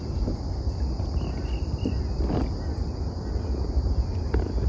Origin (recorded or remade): recorded